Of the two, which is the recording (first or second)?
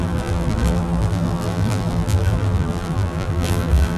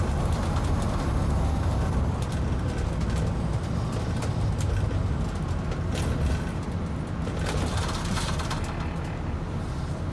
second